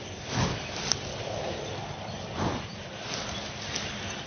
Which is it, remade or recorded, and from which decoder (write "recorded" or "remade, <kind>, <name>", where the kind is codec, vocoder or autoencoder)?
recorded